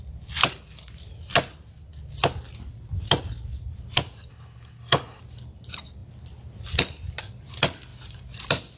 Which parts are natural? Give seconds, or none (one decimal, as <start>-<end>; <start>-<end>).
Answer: 0.0-4.3; 5.2-8.8

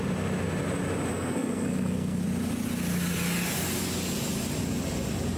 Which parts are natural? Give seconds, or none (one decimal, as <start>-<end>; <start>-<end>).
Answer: 0.0-1.1; 2.2-5.4

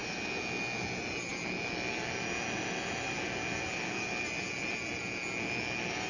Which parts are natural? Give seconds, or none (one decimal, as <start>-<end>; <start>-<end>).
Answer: 0.0-6.1

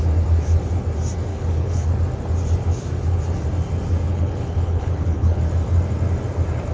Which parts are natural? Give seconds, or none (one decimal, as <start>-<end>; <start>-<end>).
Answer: 0.0-1.3; 2.0-4.1; 5.4-6.7

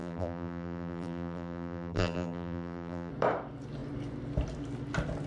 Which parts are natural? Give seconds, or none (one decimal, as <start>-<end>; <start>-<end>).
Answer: 3.1-5.3

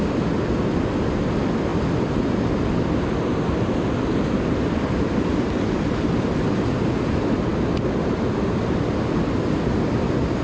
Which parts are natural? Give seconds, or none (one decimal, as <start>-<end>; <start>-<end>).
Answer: 0.0-10.4

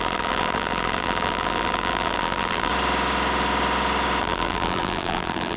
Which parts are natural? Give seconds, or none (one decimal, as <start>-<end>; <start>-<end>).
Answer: 2.7-4.2

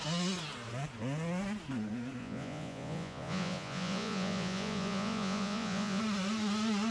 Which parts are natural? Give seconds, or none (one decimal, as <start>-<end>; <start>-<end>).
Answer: 0.0-2.2; 6.0-6.9